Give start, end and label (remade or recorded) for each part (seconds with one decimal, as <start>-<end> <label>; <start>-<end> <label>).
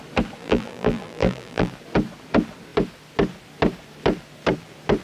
0.0-0.4 recorded; 0.4-1.7 remade; 1.7-5.0 recorded